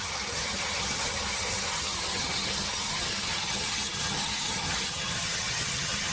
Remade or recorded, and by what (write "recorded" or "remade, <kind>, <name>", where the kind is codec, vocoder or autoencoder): remade, vocoder, HiFi-GAN